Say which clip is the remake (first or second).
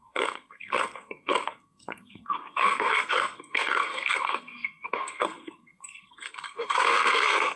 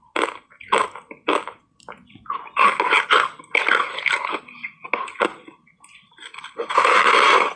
first